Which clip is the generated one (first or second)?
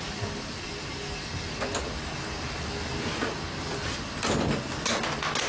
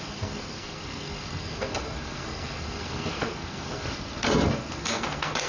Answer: second